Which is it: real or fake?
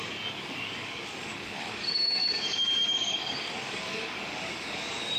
fake